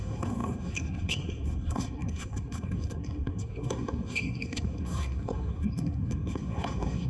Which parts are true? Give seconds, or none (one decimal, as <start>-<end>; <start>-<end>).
none